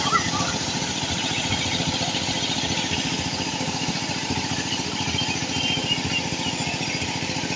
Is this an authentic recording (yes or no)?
yes